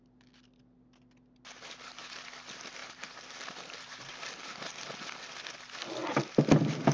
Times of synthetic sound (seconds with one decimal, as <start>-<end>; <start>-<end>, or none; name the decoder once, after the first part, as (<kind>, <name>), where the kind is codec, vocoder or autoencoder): 2.8-4.2 (vocoder, BigVGAN v2)